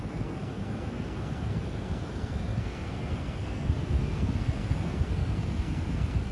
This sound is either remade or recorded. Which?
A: remade